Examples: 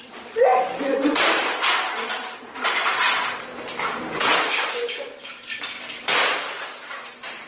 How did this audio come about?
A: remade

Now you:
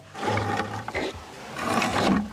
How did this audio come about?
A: remade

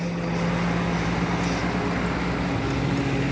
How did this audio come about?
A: recorded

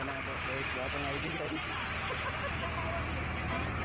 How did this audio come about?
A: recorded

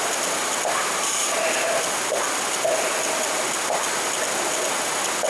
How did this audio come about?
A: recorded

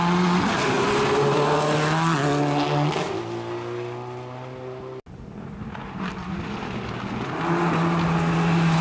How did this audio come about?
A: recorded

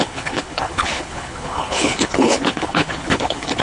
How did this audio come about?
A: remade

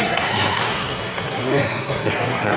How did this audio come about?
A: remade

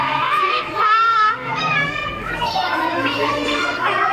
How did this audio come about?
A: remade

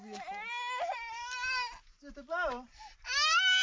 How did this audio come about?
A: recorded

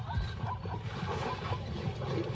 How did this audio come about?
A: recorded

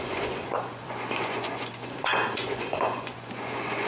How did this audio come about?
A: remade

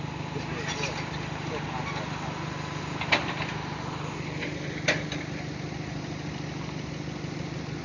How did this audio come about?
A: recorded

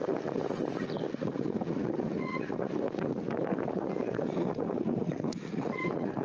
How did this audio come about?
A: remade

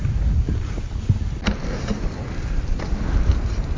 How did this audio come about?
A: recorded